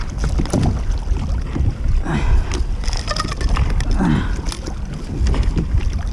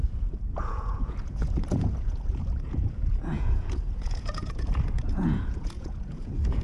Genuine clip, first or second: first